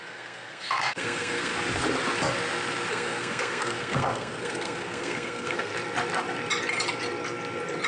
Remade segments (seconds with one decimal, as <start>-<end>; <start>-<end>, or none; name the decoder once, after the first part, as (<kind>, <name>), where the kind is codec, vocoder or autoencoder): 0.0-1.5 (codec, SNAC); 2.9-5.7